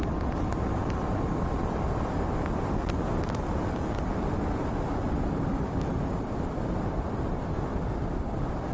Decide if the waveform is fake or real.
real